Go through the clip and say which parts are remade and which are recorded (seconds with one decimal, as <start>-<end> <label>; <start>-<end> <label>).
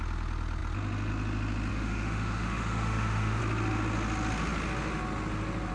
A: 0.0-1.7 recorded; 1.7-3.4 remade; 3.4-5.7 recorded